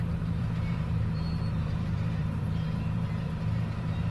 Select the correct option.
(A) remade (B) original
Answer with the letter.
A